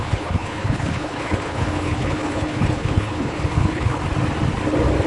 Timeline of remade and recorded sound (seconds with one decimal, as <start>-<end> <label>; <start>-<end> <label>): 0.0-4.0 remade; 4.0-5.1 recorded